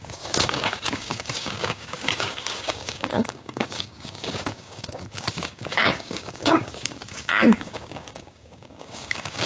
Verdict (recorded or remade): remade